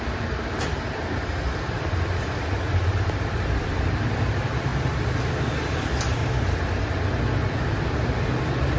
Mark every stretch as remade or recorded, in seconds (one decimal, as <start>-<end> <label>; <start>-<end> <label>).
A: 0.0-4.7 remade; 4.7-5.8 recorded; 5.8-6.2 remade; 6.2-7.5 recorded; 7.5-8.8 remade